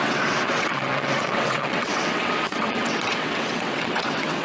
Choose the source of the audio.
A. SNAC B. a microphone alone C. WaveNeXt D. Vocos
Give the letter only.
C